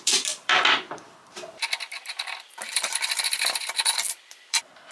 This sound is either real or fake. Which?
fake